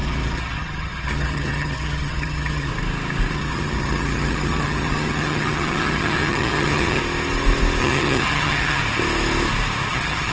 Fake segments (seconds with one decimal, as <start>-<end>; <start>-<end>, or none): 0.0-2.7; 3.3-7.0; 7.8-8.8; 9.9-10.3